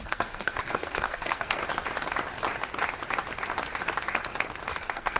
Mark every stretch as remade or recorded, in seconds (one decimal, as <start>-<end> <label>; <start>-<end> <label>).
0.0-1.6 remade; 1.6-4.7 recorded; 4.7-5.2 remade